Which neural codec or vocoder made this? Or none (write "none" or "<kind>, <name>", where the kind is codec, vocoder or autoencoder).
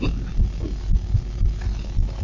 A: none